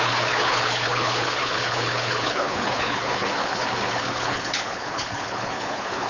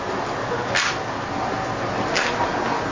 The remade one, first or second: first